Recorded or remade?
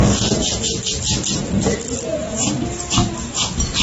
recorded